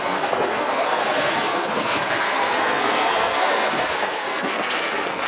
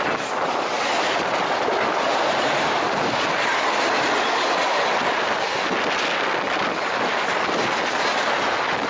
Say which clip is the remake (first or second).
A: first